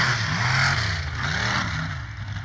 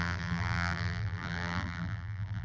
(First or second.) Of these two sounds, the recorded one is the first